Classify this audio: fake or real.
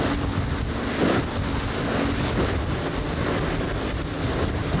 real